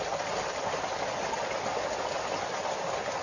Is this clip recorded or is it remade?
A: recorded